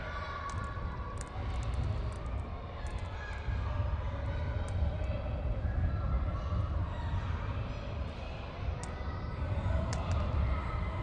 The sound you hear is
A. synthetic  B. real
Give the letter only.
B